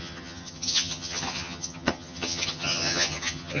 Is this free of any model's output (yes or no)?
no